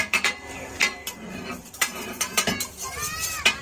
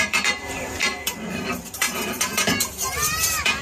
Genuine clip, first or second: first